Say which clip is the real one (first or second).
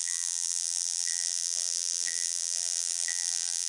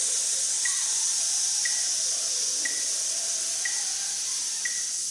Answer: second